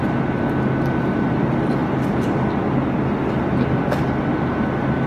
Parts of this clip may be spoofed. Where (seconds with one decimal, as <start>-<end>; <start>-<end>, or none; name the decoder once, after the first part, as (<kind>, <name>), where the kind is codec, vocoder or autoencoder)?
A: none